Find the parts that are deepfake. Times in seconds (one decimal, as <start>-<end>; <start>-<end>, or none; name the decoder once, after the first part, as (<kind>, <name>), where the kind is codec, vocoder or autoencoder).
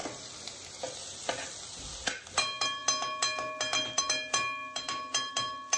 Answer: 0.0-1.2 (vocoder, BigVGAN v2)